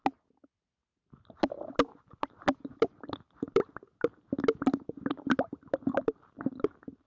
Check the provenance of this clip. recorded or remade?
recorded